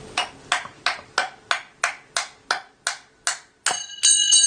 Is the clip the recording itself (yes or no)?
yes